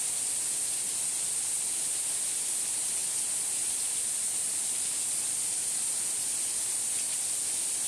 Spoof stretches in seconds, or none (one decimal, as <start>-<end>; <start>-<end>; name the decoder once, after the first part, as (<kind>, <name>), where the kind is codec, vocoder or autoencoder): none

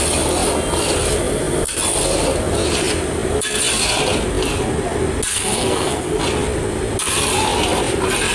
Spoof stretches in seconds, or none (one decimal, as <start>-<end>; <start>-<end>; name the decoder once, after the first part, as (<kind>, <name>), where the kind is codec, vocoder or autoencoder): 5.3-6.2 (codec, SNAC)

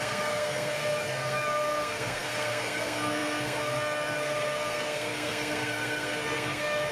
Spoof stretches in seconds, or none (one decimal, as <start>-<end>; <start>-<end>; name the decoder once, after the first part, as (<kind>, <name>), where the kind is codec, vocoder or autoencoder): 0.0-6.9 (codec, SNAC)

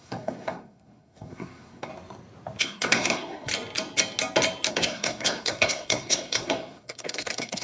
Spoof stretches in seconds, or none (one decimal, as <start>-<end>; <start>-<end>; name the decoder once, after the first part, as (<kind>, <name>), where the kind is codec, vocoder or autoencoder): 0.0-1.9 (codec, SNAC); 2.6-3.5; 4.7-7.6

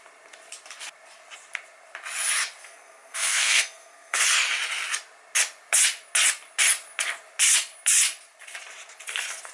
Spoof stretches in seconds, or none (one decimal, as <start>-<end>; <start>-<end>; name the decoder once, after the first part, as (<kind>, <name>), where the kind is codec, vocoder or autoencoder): 2.6-4.2 (codec, SNAC)